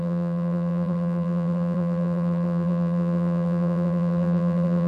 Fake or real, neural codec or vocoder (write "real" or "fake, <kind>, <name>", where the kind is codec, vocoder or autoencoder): fake, vocoder, BigVGAN v2